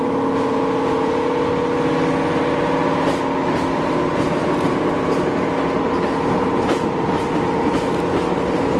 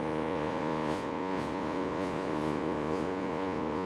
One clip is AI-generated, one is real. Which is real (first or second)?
first